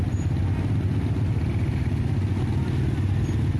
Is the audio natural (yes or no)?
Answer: yes